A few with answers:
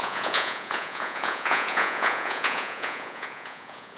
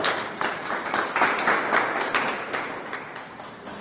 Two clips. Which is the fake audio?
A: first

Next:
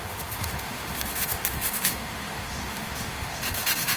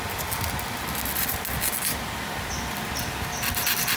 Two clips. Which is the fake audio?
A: first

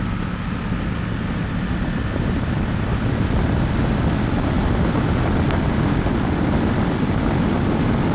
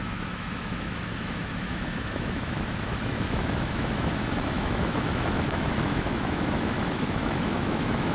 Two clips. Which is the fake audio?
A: second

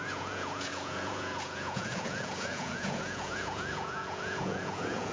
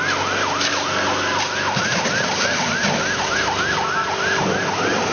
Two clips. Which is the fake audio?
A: first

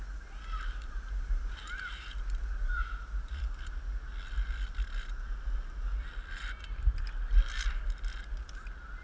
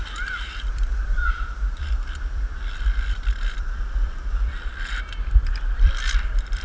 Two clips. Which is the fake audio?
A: second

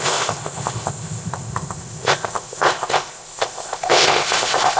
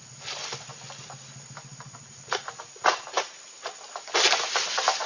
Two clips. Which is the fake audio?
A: first